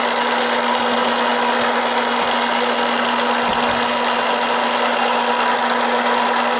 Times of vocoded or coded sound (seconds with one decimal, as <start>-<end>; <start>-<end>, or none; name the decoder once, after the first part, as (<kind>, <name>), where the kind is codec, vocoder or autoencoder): none